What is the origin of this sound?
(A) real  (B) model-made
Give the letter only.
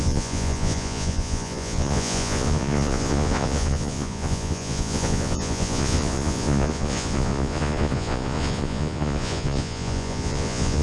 B